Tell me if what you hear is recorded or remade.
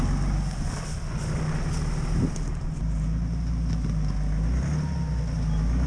recorded